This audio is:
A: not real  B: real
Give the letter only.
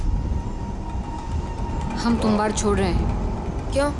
B